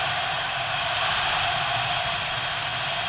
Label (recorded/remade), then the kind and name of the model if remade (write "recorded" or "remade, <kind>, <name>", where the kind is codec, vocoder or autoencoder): recorded